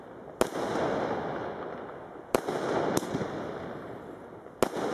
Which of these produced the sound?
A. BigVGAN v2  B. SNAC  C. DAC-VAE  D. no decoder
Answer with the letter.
D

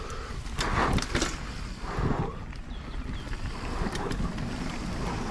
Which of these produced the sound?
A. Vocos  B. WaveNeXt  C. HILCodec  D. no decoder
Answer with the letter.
D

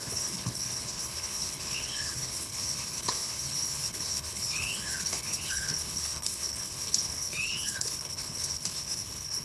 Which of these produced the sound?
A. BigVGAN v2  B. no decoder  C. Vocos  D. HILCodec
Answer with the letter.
D